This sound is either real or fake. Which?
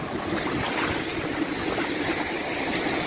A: real